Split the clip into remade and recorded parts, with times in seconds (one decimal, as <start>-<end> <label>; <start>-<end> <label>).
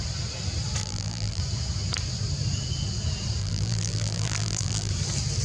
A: 0.0-0.8 recorded; 0.8-1.4 remade; 1.4-3.4 recorded; 3.4-4.9 remade; 4.9-5.4 recorded